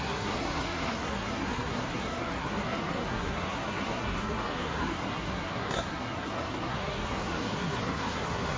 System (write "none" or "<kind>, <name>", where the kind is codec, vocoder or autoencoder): codec, SNAC